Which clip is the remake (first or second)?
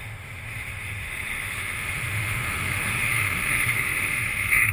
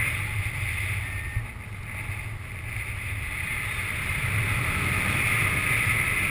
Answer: first